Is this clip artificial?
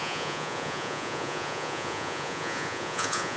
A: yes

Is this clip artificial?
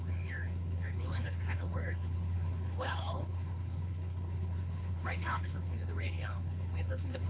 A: yes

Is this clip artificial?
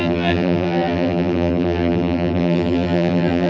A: yes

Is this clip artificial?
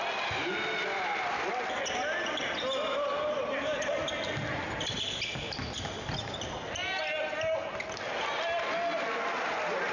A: no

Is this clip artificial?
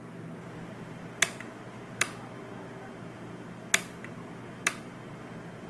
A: no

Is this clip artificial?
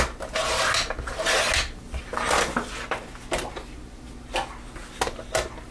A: no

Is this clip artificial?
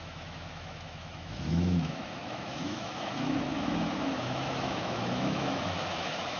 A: yes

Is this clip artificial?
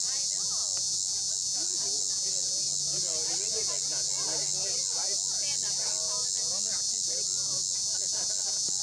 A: no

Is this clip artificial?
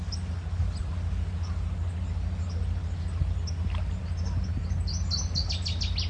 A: no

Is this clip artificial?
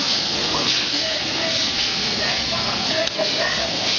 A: yes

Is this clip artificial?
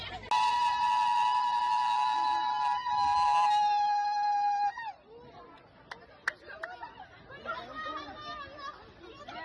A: no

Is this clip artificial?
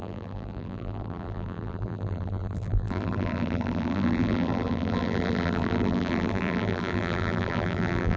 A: yes